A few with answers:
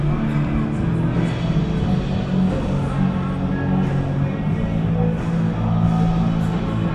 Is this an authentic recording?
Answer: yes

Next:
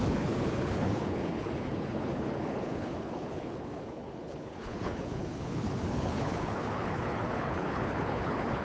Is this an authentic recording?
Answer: no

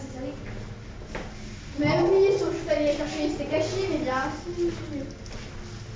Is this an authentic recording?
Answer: yes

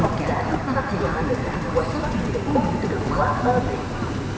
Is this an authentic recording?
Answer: yes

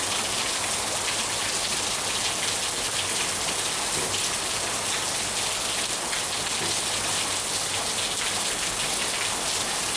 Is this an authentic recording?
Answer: yes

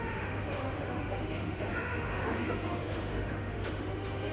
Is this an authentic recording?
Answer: no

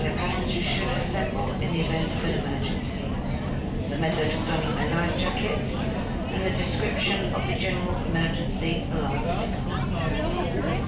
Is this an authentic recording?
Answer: yes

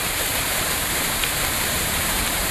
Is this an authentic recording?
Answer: no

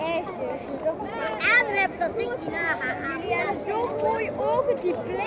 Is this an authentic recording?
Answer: yes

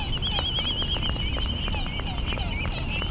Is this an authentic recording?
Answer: yes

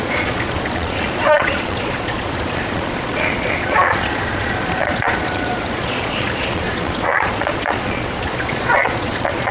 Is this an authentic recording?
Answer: no